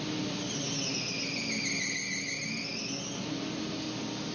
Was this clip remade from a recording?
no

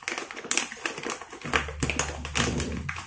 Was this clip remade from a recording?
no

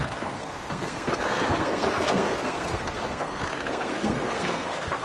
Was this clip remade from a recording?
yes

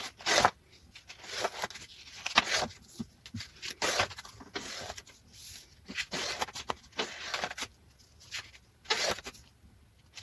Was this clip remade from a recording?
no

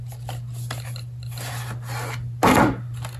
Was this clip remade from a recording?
no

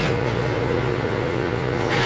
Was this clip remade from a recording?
yes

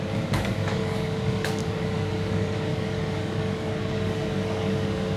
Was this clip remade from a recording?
yes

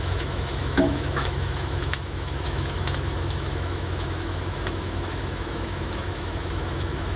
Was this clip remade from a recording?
yes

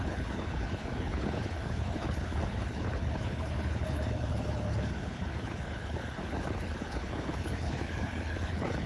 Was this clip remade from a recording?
yes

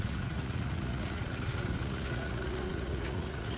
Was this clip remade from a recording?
yes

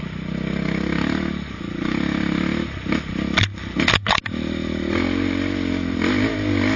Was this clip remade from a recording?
no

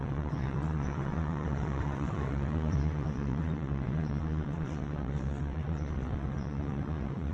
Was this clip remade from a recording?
yes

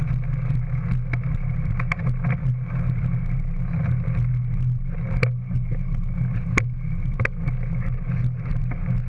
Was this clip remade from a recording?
no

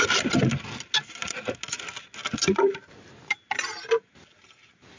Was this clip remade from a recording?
no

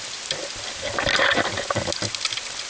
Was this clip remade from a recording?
no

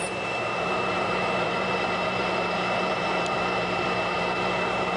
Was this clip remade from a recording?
yes